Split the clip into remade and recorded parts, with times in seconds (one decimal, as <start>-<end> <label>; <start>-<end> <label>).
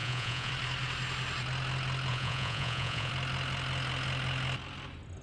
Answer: 0.0-0.5 remade; 0.5-2.1 recorded; 2.1-3.1 remade; 3.1-5.2 recorded